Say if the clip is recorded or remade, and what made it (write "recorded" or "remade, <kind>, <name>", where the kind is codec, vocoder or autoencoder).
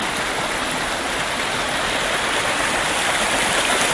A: recorded